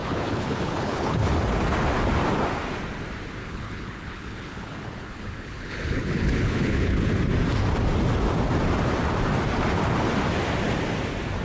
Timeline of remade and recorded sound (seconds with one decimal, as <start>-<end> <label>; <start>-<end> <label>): 0.0-1.3 remade; 1.3-3.4 recorded; 3.4-7.1 remade; 7.1-11.4 recorded